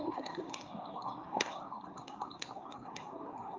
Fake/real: fake